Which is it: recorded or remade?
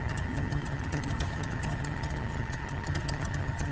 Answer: remade